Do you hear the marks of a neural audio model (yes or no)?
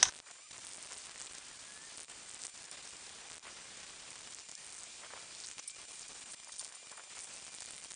no